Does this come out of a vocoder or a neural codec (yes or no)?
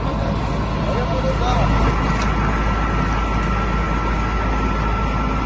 no